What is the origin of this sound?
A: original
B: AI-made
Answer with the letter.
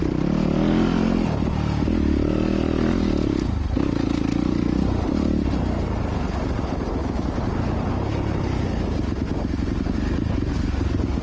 A